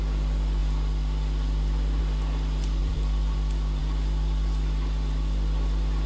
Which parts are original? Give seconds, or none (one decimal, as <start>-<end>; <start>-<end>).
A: 0.0-2.8; 3.8-6.1